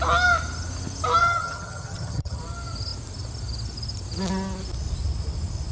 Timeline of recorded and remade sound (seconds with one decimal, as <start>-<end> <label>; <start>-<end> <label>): 0.0-1.2 recorded; 1.2-2.4 remade; 2.4-5.7 recorded